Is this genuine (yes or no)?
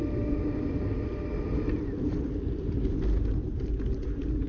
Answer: yes